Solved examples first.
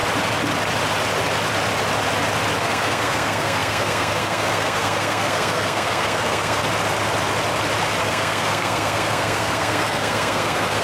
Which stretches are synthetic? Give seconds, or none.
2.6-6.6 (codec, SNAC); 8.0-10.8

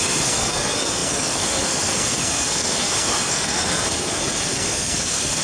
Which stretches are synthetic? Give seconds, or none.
0.0-5.4 (codec, SNAC)